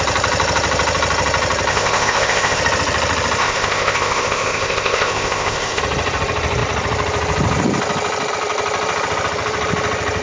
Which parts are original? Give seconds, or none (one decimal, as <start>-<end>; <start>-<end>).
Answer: 0.0-1.7; 2.6-3.4; 5.8-10.2